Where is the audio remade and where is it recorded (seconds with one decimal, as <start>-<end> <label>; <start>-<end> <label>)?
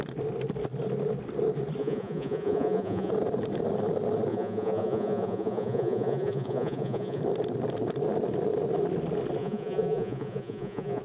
0.0-1.8 recorded; 1.8-3.1 remade; 3.1-4.3 recorded; 4.3-7.2 remade; 7.2-9.4 recorded; 9.4-11.0 remade